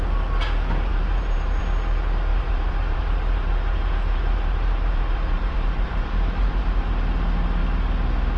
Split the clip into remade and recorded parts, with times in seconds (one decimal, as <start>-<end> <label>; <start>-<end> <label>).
0.0-0.9 recorded; 0.9-1.6 remade; 1.6-2.3 recorded; 2.3-6.9 remade; 6.9-8.4 recorded